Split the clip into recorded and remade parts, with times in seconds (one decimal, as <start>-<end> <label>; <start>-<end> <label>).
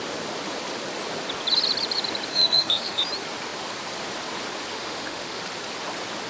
0.0-2.3 recorded; 2.3-3.0 remade; 3.0-4.7 recorded; 4.7-5.4 remade; 5.4-6.3 recorded